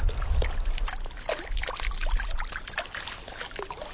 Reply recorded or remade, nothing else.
recorded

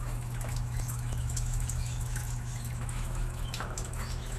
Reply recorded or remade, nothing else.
remade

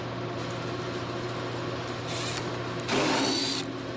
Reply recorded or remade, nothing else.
recorded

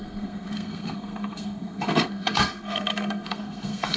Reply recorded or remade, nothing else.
remade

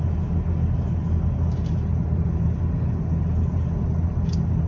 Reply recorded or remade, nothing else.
recorded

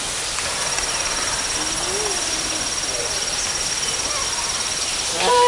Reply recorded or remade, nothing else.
recorded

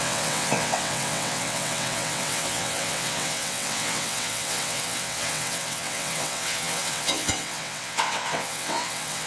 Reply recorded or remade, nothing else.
remade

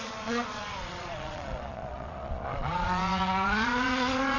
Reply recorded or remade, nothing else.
remade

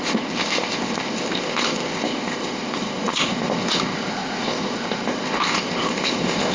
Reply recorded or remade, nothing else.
remade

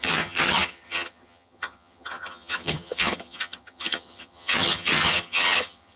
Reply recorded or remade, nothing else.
remade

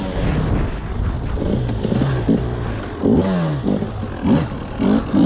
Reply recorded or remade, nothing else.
recorded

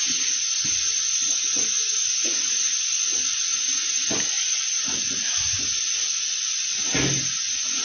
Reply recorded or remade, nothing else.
recorded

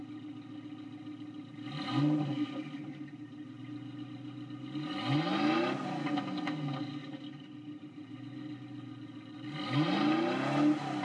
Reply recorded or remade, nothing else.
recorded